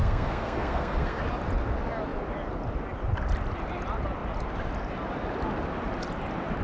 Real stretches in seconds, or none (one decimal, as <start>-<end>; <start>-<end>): 1.2-6.6